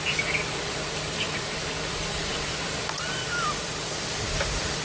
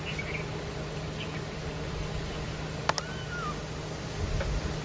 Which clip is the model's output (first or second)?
first